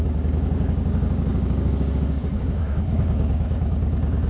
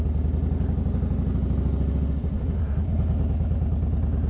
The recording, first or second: second